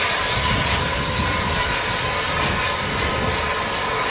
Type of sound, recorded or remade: recorded